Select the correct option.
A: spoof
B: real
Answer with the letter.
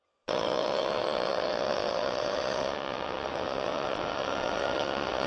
A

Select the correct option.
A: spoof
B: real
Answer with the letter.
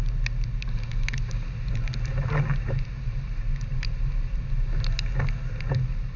B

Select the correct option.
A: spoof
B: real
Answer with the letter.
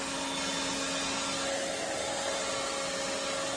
B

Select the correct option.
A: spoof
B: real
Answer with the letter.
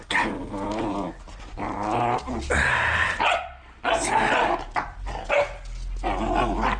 B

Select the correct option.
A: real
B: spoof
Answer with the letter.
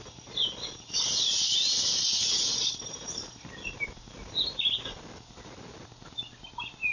A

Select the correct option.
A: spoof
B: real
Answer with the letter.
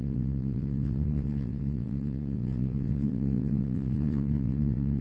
A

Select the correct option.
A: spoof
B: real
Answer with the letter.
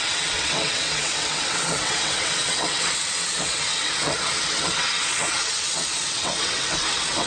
A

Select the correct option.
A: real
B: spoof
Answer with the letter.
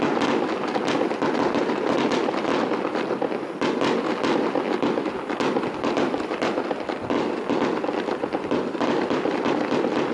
A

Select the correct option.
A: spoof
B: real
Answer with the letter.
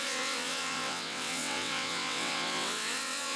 A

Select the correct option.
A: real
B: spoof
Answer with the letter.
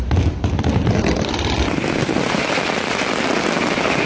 A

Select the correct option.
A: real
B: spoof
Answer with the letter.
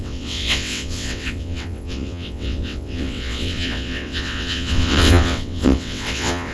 B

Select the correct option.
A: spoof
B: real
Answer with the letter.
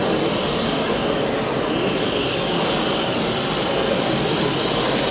B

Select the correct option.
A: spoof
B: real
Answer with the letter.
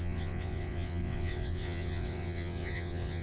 A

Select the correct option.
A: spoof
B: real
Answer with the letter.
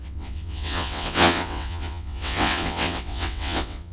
A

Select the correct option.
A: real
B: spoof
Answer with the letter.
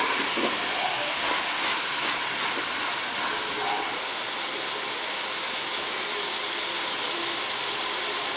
A